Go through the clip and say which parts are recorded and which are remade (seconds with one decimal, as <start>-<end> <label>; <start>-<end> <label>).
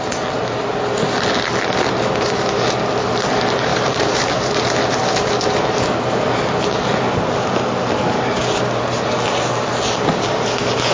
0.0-3.7 recorded; 3.7-4.2 remade; 4.2-10.9 recorded